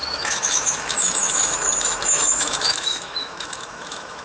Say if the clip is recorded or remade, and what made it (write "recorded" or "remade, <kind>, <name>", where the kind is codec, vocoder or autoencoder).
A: remade, autoencoder, DAC-VAE